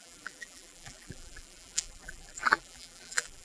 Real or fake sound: fake